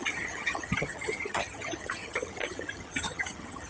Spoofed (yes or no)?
yes